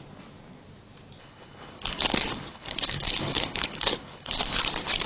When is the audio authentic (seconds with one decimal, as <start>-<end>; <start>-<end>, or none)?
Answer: 0.0-1.2; 4.3-5.1